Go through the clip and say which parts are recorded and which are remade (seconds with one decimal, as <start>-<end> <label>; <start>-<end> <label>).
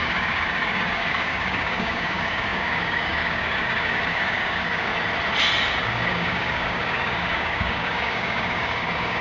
0.0-4.9 remade; 4.9-5.8 recorded; 5.8-9.2 remade